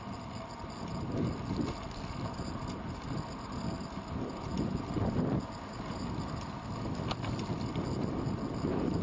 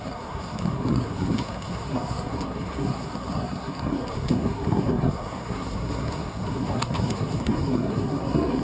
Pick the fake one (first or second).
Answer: second